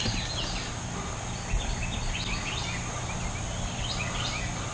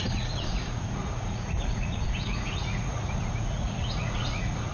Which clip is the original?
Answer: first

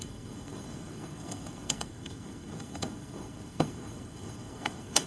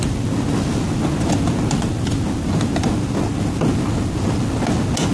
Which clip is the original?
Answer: second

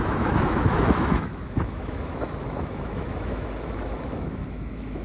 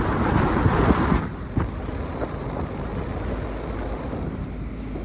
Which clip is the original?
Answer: second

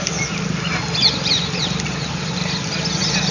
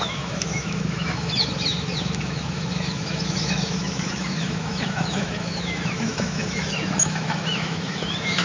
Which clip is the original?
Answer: first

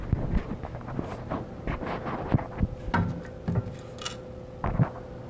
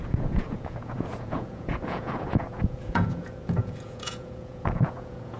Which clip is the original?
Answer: first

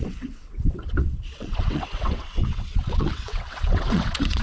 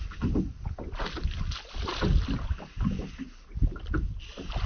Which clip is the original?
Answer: second